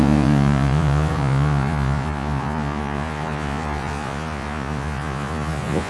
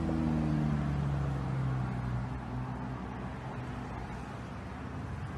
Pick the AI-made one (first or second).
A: first